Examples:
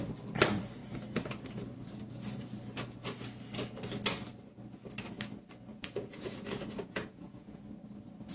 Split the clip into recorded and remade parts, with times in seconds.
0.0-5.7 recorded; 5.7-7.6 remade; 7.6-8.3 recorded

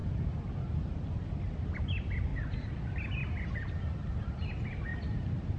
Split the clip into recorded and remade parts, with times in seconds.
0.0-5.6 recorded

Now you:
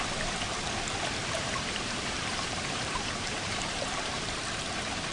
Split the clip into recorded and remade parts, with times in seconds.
0.0-1.2 recorded; 1.2-4.3 remade; 4.3-5.1 recorded

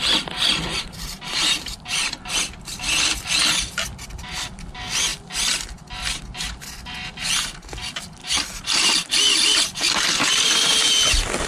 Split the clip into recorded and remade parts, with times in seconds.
0.0-0.7 recorded; 0.7-2.1 remade; 2.1-8.2 recorded; 8.2-10.9 remade; 10.9-11.5 recorded

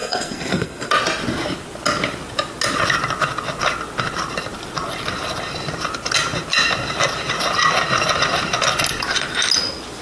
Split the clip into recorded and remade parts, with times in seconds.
0.0-0.9 remade; 0.9-10.0 recorded

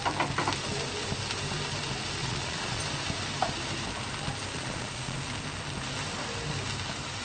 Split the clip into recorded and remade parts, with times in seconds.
0.0-2.2 recorded; 2.2-2.8 remade; 2.8-4.5 recorded; 4.5-5.2 remade; 5.2-7.2 recorded

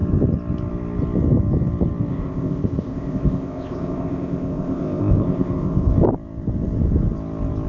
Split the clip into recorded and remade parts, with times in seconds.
0.0-2.1 recorded; 2.1-5.9 remade; 5.9-7.7 recorded

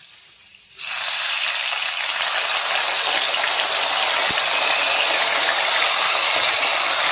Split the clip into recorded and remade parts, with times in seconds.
0.0-7.1 recorded